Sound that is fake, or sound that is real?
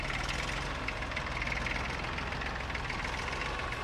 real